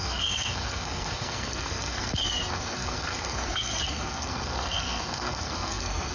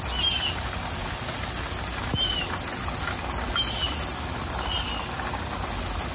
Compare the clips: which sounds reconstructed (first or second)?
first